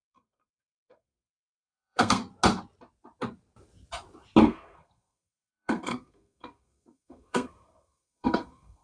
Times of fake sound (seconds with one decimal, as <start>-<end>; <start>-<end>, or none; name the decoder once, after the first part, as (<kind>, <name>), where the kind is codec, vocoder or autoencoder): 0.0-2.2 (codec, SNAC); 4.4-8.8